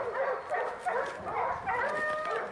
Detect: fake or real real